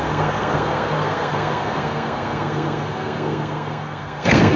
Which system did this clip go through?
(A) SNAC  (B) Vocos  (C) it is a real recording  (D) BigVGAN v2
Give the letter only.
A